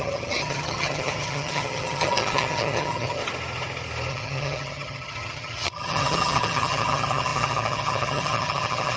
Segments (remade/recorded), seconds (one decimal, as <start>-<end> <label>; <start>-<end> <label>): 0.0-3.2 remade; 3.2-4.1 recorded; 4.1-9.0 remade